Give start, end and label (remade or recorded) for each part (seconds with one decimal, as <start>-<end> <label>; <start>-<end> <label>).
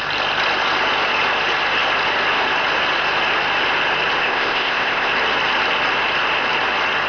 0.0-4.2 recorded; 4.2-5.1 remade; 5.1-7.1 recorded